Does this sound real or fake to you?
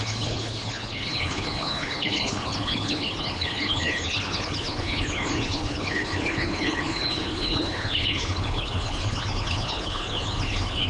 fake